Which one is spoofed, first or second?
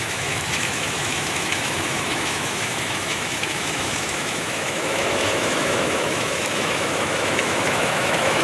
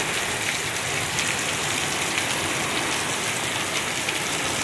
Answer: first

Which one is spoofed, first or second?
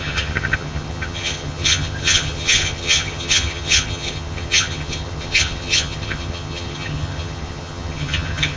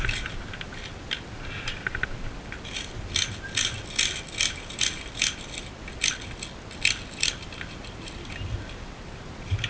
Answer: first